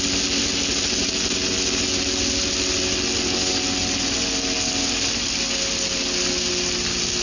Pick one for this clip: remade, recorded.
recorded